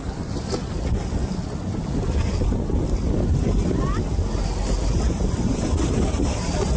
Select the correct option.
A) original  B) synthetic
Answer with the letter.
A